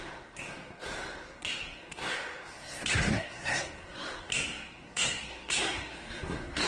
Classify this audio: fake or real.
fake